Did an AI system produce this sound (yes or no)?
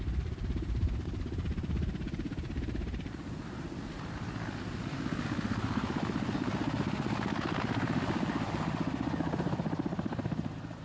yes